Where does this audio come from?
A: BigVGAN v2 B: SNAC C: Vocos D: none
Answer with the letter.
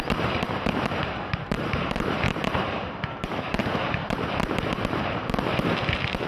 A